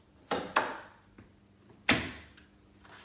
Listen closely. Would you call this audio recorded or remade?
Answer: recorded